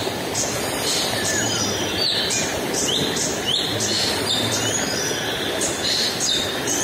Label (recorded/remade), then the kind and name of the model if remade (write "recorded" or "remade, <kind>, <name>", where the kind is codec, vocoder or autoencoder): remade, vocoder, BigVGAN v2